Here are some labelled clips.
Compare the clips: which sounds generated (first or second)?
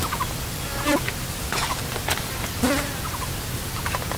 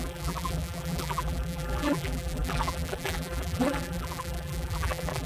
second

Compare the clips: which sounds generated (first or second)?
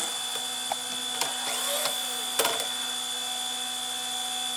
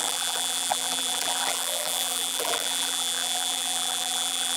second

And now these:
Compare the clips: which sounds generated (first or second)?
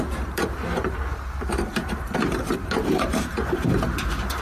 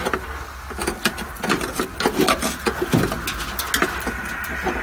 first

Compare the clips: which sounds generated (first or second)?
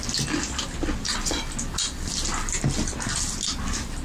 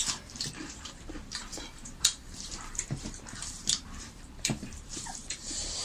second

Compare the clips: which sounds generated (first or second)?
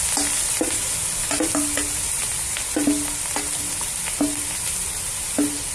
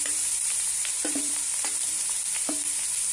second